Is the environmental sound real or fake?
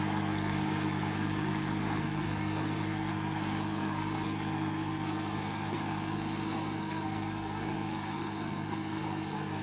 fake